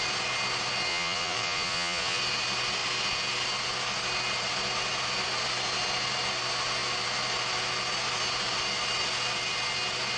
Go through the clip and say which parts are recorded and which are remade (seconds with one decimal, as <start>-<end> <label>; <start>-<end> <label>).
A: 0.0-0.9 recorded; 0.9-2.2 remade; 2.2-10.2 recorded